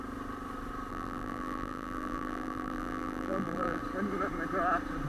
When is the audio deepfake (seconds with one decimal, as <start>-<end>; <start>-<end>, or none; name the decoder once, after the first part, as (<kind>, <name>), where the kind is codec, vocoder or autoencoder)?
0.9-3.8 (vocoder, BigVGAN v2)